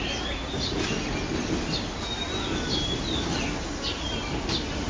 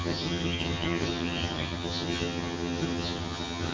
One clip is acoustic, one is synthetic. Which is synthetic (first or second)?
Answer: second